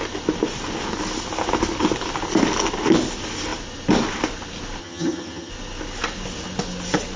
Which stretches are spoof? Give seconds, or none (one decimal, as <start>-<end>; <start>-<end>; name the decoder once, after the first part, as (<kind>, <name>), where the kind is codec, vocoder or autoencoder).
4.8-5.5 (vocoder, HiFi-GAN)